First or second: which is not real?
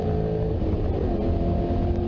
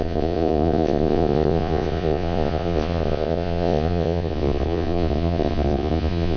second